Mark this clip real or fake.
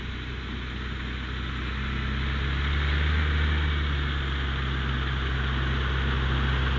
real